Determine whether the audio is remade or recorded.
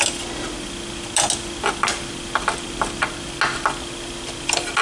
recorded